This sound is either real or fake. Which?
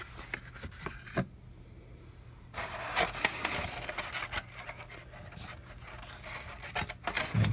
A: real